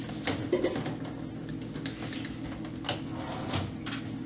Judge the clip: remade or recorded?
recorded